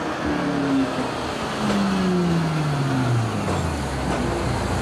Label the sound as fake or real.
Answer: real